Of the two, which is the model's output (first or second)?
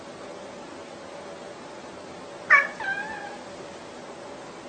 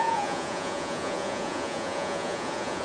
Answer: second